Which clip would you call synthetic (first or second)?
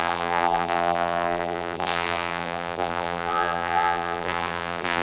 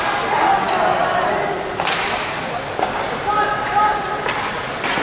first